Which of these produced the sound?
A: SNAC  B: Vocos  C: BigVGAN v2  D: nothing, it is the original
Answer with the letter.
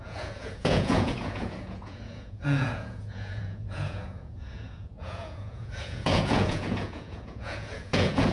B